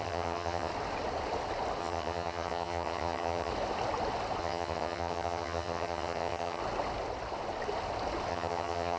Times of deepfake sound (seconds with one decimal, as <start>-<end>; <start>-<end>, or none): 0.0-0.7; 1.8-3.5; 4.4-6.6; 8.3-9.0